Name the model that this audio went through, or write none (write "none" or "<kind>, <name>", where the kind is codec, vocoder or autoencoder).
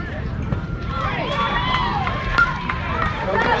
vocoder, BigVGAN v2